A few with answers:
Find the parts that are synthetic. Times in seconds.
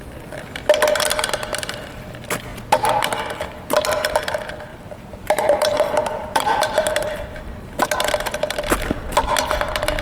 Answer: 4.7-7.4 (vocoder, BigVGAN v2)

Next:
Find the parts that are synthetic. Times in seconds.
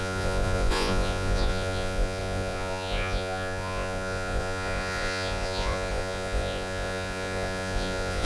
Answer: 0.0-8.3 (vocoder, Vocos)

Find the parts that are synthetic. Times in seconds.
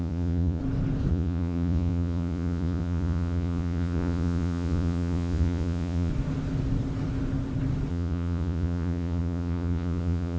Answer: 0.0-0.6 (vocoder, Vocos); 1.1-6.1; 7.9-10.4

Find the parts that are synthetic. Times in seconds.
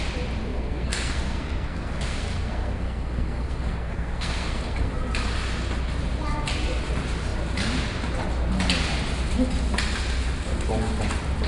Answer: 0.5-4.9 (codec, SNAC)